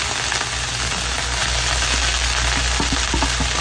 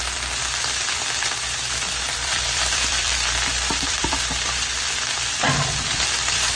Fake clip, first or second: second